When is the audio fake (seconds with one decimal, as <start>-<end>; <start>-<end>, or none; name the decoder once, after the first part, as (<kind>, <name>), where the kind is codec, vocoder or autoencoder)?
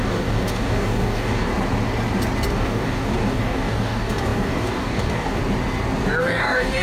0.0-1.5 (codec, DAC); 2.5-5.4; 6.2-6.8